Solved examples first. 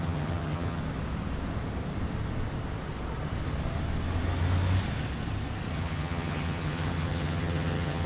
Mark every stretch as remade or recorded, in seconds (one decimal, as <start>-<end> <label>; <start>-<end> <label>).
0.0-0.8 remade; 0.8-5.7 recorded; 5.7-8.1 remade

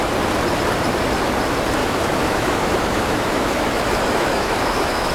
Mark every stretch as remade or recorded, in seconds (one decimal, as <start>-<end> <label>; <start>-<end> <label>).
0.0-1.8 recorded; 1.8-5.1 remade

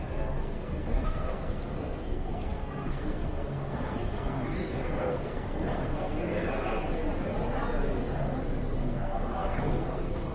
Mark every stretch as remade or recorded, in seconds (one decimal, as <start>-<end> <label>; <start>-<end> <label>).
0.0-7.0 remade; 7.0-8.8 recorded; 8.8-10.3 remade

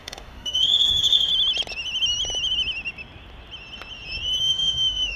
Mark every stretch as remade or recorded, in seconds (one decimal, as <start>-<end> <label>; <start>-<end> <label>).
0.0-1.3 remade; 1.3-4.4 recorded; 4.4-5.2 remade